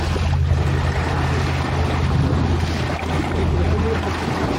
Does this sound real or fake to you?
real